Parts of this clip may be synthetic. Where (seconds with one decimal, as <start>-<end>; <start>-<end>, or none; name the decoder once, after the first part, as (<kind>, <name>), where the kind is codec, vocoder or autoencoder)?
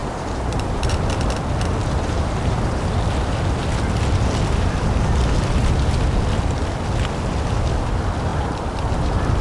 0.0-1.1 (vocoder, BigVGAN v2); 1.8-2.8